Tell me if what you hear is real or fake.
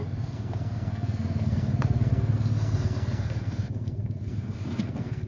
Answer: fake